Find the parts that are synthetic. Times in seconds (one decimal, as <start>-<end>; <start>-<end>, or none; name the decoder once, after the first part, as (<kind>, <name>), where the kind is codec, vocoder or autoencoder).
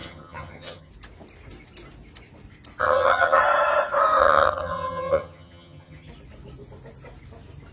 0.0-0.9 (vocoder, HiFi-GAN); 2.8-3.4; 4.2-6.1